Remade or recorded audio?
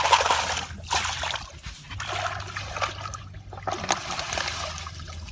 recorded